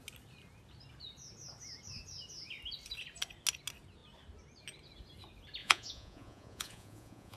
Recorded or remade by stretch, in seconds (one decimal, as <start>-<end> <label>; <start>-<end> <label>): 0.0-5.6 recorded; 5.6-7.4 remade